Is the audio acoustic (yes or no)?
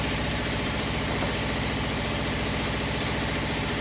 no